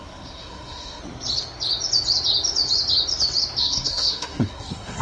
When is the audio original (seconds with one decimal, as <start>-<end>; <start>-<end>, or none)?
1.0-3.6